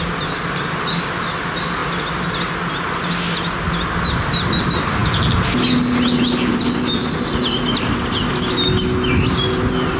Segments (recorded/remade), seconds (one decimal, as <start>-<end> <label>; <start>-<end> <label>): 0.0-10.0 recorded